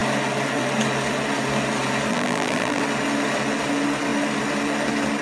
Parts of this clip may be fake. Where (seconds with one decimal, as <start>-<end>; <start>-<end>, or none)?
2.1-2.8